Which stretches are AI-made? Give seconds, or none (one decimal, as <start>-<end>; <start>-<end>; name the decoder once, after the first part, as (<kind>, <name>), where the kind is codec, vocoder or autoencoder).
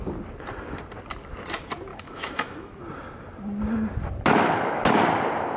1.9-2.8 (autoencoder, DAC-VAE)